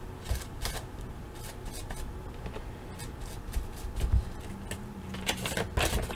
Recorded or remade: recorded